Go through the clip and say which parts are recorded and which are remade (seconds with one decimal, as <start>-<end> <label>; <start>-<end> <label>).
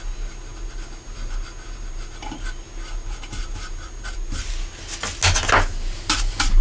0.0-6.6 recorded